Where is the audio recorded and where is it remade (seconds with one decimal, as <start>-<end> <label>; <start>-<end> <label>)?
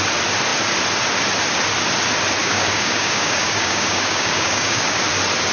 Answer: 0.0-2.4 recorded; 2.4-5.0 remade; 5.0-5.5 recorded